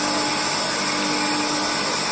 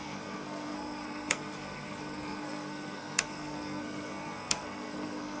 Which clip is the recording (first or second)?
first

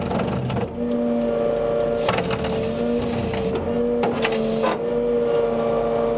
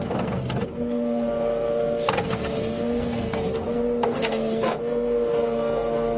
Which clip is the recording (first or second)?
first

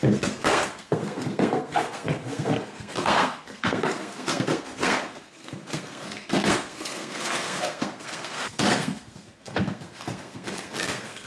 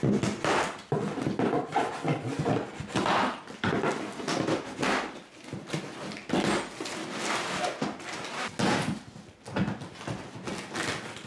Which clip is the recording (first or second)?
second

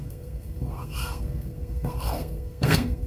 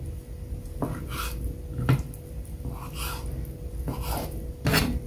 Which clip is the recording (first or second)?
second